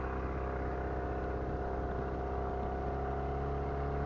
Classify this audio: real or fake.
real